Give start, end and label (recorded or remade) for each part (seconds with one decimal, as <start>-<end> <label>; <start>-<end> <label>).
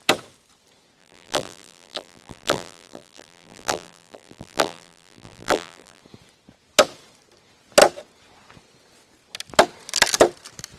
0.0-1.0 recorded; 1.0-6.0 remade; 6.0-10.8 recorded